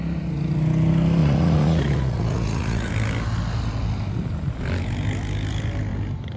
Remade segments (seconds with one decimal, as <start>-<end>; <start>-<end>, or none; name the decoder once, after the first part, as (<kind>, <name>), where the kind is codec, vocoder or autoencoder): 1.2-2.9 (vocoder, Vocos)